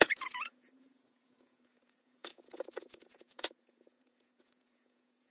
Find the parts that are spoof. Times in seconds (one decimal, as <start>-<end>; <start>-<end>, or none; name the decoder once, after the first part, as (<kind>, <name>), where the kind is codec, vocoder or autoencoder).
0.0-5.3 (vocoder, Vocos)